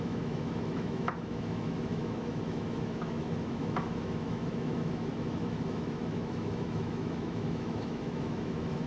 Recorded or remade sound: remade